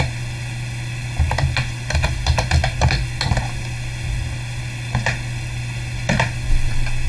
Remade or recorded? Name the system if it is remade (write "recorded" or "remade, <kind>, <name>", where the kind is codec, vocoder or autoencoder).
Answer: recorded